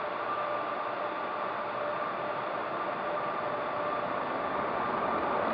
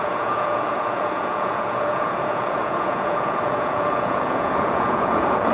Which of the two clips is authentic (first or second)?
first